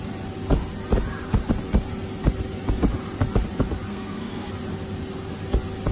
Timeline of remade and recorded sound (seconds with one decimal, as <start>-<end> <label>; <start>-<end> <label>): 0.0-3.9 recorded; 3.9-4.5 remade; 4.5-5.9 recorded